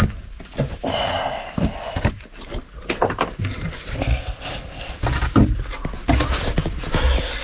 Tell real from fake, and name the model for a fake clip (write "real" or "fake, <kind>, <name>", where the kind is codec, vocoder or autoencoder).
real